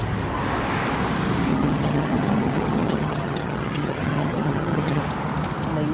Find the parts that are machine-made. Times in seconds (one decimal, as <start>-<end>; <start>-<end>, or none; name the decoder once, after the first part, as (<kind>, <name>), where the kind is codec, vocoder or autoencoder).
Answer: 1.5-5.0 (vocoder, HiFi-GAN)